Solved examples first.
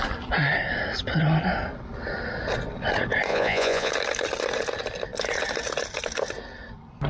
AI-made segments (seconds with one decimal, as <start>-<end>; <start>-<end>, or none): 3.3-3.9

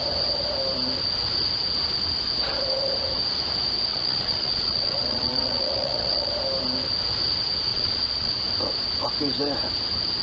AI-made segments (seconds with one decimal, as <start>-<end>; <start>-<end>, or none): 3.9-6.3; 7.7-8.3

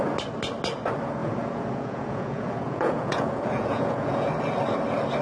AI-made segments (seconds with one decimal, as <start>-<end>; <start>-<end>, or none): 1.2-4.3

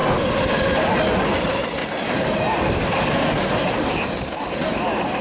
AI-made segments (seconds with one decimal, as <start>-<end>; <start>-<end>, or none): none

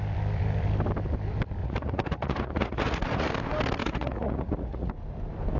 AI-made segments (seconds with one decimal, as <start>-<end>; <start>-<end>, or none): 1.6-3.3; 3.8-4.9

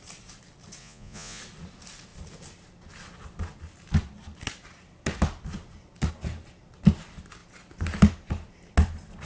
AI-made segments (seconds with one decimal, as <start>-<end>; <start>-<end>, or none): 0.8-1.4

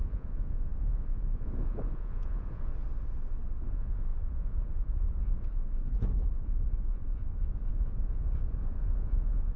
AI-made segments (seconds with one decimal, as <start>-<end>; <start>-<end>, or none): 0.0-2.7; 3.6-9.6